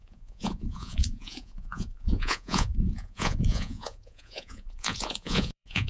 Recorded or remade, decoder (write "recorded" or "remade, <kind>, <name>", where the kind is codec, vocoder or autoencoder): remade, vocoder, Vocos